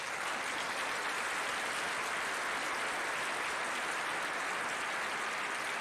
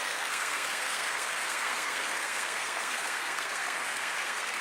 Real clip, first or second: first